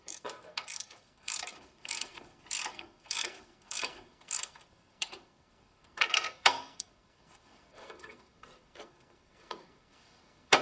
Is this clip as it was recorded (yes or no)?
no